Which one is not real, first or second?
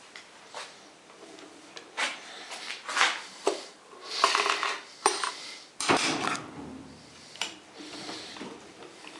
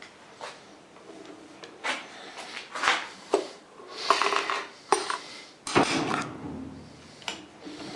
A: first